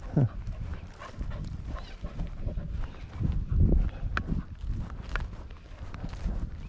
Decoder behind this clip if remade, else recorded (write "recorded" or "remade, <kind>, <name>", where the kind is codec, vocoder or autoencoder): recorded